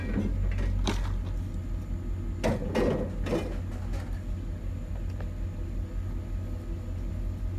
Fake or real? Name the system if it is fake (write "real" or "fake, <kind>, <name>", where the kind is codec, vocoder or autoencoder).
real